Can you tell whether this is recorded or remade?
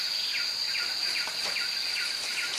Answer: recorded